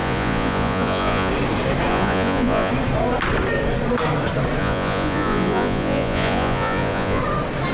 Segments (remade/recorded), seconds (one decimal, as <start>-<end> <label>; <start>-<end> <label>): 0.0-1.3 remade; 1.3-1.9 recorded; 1.9-2.7 remade; 2.7-4.6 recorded; 4.6-7.2 remade; 7.2-7.7 recorded